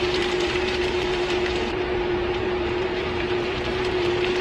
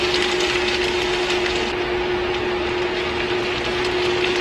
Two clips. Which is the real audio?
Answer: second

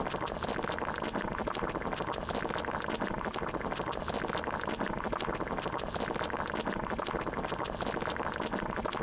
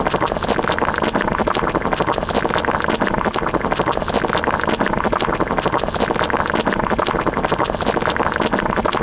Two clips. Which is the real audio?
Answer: second